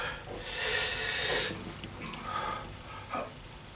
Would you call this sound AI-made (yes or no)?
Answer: no